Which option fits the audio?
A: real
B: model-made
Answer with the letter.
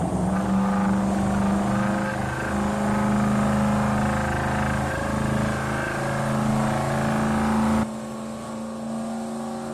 A